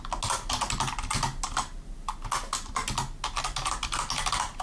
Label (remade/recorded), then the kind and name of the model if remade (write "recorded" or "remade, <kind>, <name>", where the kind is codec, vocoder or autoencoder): recorded